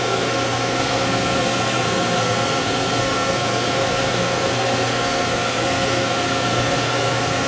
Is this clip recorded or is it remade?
remade